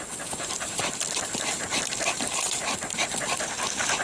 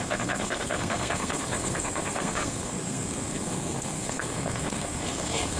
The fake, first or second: second